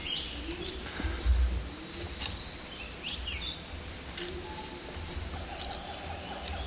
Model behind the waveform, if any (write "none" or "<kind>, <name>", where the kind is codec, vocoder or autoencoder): none